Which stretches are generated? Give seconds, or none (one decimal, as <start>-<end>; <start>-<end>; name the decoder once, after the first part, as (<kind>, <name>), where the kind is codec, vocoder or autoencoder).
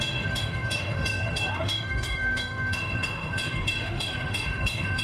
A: 0.0-5.0 (autoencoder, DAC-VAE)